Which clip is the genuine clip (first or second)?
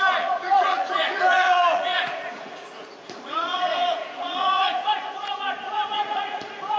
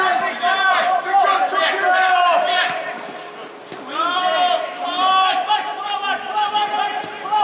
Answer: second